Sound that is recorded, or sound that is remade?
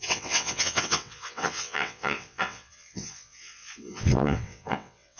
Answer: remade